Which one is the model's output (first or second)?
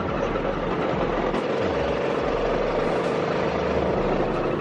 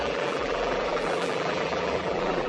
second